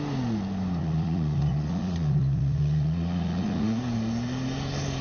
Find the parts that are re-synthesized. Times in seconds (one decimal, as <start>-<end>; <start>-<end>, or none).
0.8-3.8